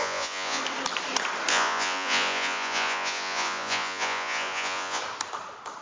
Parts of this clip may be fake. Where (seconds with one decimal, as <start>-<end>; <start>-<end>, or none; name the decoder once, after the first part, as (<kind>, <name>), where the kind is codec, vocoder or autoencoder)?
0.0-0.6 (vocoder, Vocos); 1.5-5.0

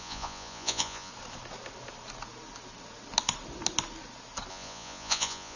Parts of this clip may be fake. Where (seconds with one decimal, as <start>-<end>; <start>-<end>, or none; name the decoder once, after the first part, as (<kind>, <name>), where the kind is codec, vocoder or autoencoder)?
0.0-1.1 (vocoder, Vocos); 4.5-5.6

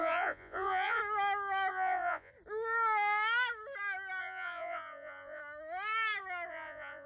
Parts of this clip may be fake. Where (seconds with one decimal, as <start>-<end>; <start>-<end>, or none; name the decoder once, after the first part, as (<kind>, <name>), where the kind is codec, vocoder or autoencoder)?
0.0-1.0 (vocoder, Vocos); 1.7-2.3; 4.2-5.4; 6.5-7.1

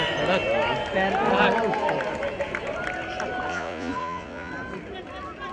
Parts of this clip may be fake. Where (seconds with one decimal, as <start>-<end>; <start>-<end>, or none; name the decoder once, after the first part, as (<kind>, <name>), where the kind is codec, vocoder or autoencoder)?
3.5-4.5 (vocoder, Vocos)

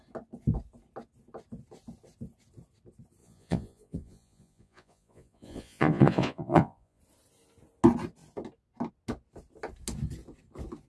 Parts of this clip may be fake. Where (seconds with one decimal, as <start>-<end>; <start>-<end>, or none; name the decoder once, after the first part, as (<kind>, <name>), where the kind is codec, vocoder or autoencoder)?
3.2-7.0 (vocoder, Vocos)

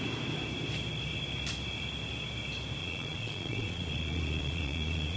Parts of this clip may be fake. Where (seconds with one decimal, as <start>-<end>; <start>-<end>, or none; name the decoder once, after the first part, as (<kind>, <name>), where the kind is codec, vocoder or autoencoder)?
2.8-5.2 (vocoder, Vocos)